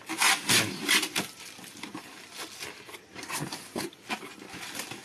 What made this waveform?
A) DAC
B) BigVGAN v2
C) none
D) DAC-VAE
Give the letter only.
C